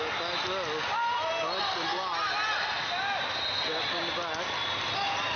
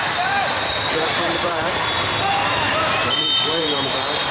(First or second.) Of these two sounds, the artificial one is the second